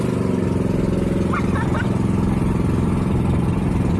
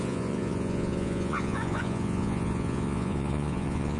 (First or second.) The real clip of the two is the first